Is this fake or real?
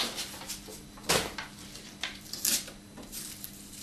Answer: fake